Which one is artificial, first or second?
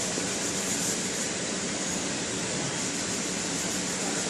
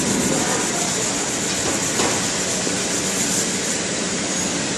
first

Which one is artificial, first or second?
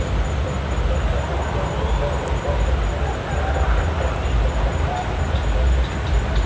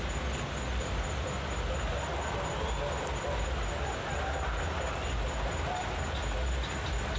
first